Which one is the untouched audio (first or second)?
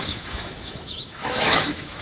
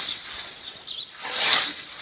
second